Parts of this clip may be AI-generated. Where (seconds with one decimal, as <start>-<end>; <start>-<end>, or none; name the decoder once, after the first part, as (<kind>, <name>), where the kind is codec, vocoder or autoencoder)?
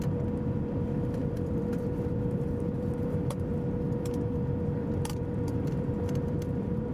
0.0-6.9 (vocoder, BigVGAN v2)